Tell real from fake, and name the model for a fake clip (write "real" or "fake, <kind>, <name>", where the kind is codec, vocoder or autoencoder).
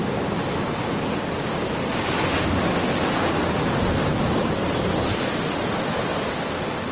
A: real